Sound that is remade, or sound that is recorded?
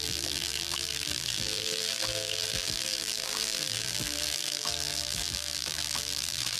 remade